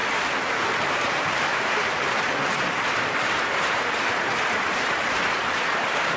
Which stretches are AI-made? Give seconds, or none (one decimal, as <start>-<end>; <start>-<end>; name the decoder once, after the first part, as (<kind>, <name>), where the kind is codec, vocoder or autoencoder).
2.7-6.2 (vocoder, BigVGAN v2)